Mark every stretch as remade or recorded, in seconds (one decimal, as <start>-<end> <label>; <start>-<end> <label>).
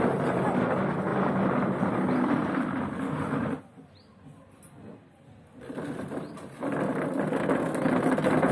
0.0-1.1 recorded; 1.1-3.6 remade; 3.6-8.5 recorded